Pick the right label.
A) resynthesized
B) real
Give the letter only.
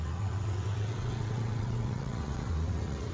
A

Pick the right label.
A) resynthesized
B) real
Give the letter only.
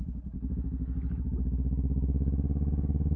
B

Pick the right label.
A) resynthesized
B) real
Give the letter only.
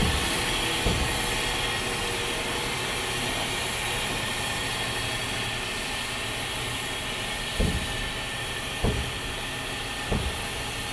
B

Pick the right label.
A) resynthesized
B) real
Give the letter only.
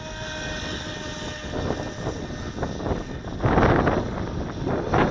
B